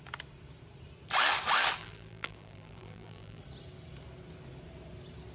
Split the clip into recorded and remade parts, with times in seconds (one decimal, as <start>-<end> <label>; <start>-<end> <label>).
0.0-1.8 recorded; 1.8-3.4 remade; 3.4-5.3 recorded